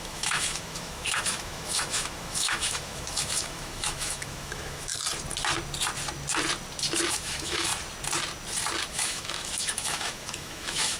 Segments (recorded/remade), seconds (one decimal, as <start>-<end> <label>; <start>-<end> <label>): 0.0-4.9 remade; 4.9-7.1 recorded; 7.1-7.7 remade; 7.7-8.9 recorded; 8.9-11.0 remade